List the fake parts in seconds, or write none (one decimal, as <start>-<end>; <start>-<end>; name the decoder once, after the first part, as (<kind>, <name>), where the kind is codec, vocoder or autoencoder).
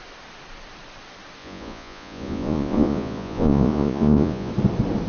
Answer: 1.4-4.5 (vocoder, Vocos)